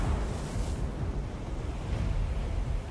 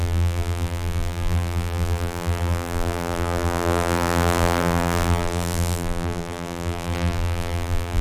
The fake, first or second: second